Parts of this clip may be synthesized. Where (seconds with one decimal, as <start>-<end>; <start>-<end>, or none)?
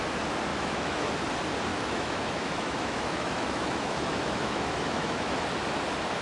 0.5-1.1; 1.7-5.4